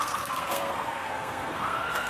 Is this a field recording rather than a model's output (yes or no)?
no